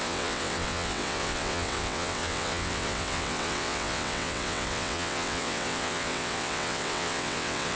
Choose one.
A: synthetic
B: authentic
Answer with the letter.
A